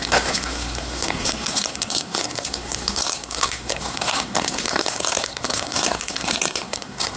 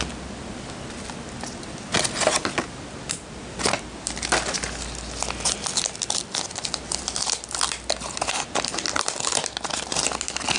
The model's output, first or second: first